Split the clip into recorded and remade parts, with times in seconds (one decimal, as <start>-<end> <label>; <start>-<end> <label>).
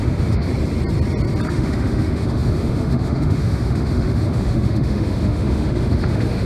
0.0-0.5 remade; 0.5-1.5 recorded; 1.5-6.5 remade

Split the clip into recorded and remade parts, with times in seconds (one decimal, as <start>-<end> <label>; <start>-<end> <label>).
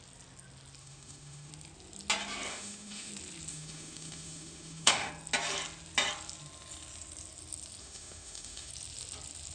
0.0-0.8 recorded; 0.8-1.5 remade; 1.5-2.5 recorded; 2.5-3.1 remade; 3.1-3.5 recorded; 3.5-5.1 remade; 5.1-7.8 recorded; 7.8-8.7 remade; 8.7-9.5 recorded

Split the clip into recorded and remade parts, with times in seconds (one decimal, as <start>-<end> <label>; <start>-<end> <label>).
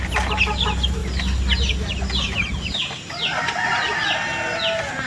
0.0-5.1 recorded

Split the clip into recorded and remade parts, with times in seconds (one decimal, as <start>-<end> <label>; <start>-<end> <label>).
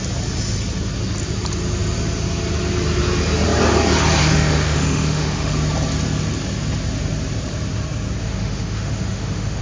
0.0-4.2 recorded; 4.2-5.5 remade; 5.5-8.2 recorded; 8.2-9.6 remade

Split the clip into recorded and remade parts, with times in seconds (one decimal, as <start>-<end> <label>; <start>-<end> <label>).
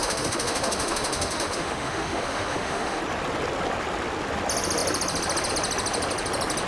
0.0-3.0 remade; 3.0-6.7 recorded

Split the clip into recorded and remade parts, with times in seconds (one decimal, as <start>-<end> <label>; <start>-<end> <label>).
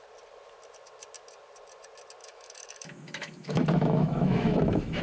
0.0-2.2 recorded; 2.2-5.0 remade